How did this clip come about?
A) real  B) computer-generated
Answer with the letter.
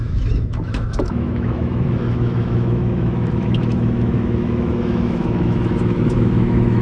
B